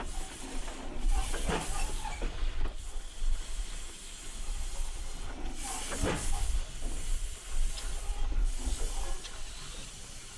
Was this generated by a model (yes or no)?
no